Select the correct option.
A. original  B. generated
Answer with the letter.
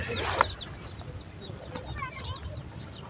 A